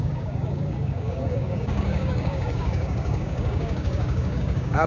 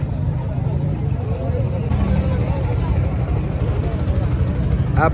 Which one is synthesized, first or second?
first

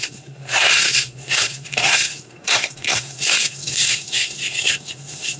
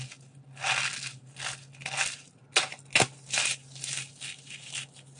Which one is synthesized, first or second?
first